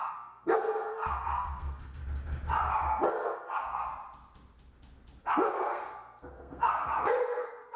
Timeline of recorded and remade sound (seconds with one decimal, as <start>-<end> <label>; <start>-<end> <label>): 0.0-2.0 remade; 2.0-3.1 recorded; 3.1-3.9 remade; 3.9-5.2 recorded; 5.2-7.8 remade